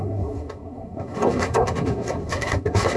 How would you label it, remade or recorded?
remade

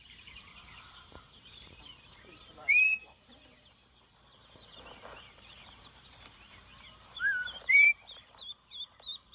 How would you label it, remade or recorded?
remade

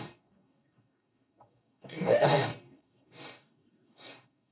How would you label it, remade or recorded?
remade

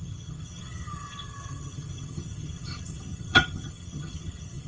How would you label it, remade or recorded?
remade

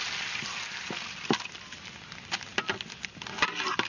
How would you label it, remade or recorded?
recorded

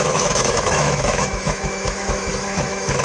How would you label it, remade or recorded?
remade